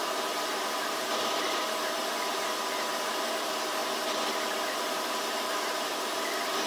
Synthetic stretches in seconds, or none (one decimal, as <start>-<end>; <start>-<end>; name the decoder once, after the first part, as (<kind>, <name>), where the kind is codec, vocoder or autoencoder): 0.0-3.8 (vocoder, BigVGAN v2); 4.8-6.7